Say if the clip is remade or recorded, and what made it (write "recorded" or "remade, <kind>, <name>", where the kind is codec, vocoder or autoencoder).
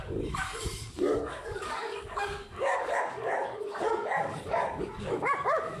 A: remade, codec, DAC